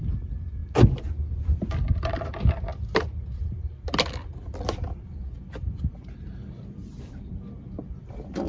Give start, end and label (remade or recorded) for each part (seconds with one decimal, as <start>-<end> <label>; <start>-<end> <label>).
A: 0.0-8.5 recorded